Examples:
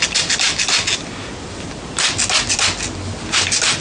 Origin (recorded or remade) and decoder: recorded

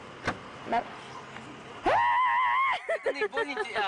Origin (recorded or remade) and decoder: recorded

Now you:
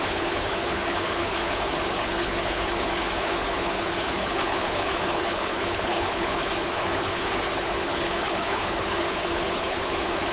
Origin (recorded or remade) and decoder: remade, codec, HILCodec